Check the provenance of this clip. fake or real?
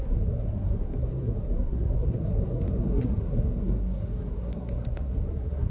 fake